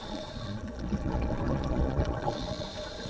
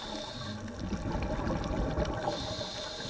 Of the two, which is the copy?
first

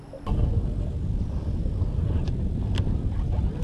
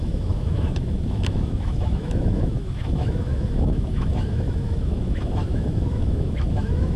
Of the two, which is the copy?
second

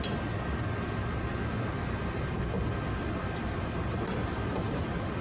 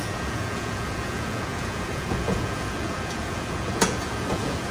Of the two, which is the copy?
second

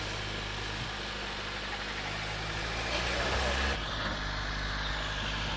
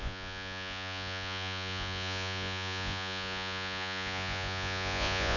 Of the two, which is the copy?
second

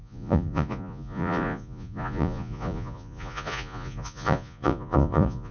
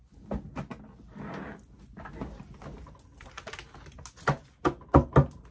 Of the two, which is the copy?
first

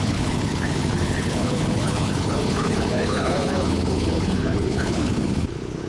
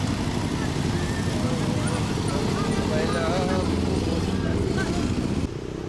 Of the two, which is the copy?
first